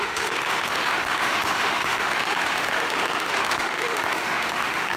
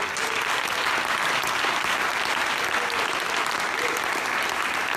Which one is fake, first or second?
first